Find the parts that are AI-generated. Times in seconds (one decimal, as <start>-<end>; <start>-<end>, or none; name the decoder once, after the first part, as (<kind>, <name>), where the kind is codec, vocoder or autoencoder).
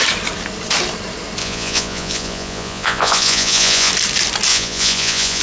1.4-3.9 (vocoder, Vocos); 4.5-5.4